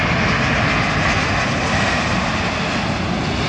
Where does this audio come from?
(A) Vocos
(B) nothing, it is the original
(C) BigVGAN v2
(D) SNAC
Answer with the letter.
B